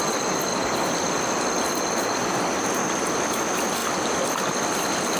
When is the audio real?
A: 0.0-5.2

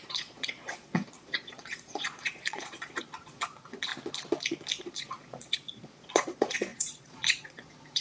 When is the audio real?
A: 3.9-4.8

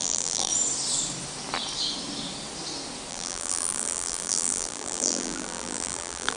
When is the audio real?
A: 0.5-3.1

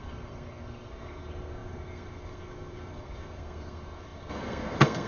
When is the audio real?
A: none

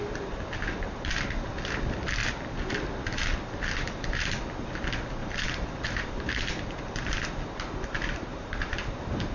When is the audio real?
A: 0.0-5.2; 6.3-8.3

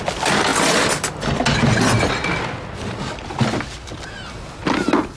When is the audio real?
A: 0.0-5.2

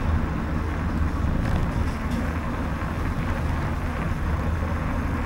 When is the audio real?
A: 0.0-5.3